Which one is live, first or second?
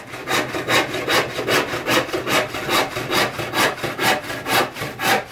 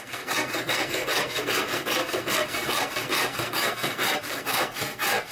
first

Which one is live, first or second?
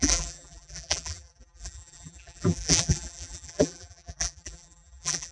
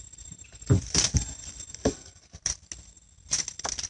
second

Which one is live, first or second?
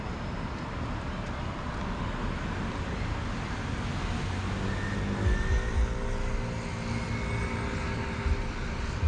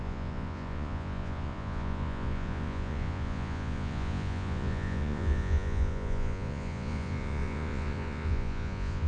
first